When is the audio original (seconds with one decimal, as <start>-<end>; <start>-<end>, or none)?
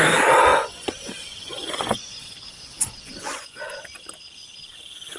0.0-0.5; 3.6-5.2